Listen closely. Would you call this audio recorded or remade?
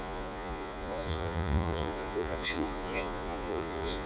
remade